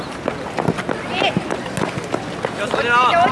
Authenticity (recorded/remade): recorded